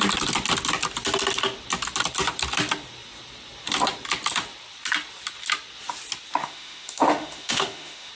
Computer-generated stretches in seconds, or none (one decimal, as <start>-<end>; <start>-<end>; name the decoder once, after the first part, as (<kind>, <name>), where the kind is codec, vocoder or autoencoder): 6.4-8.1 (autoencoder, DAC-VAE)